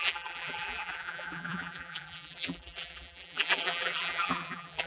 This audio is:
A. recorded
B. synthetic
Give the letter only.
B